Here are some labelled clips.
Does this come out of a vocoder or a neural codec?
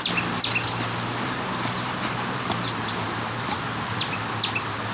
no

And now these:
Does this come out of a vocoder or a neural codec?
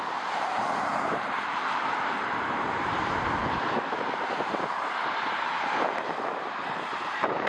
yes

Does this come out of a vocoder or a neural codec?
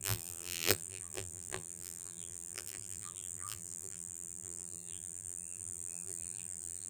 yes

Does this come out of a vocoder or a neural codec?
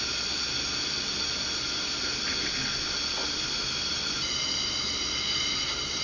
no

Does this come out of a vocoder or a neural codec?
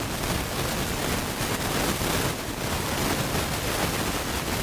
no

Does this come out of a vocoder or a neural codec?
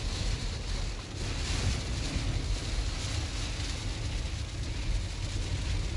no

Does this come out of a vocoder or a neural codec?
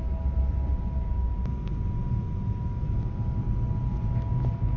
no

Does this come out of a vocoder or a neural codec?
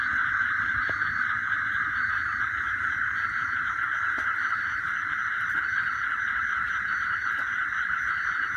yes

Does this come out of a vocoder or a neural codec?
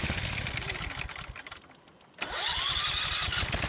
yes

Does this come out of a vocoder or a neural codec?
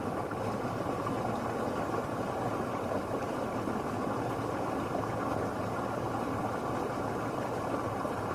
no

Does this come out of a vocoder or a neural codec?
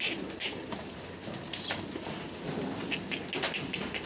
no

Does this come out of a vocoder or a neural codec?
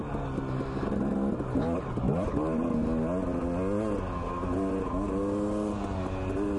no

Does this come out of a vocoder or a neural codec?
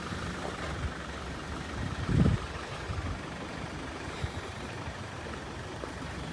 yes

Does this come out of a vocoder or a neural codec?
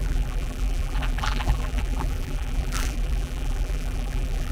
yes